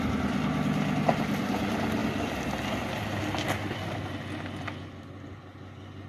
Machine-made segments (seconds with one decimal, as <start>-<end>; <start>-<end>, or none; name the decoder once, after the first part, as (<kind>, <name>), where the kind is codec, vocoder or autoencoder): none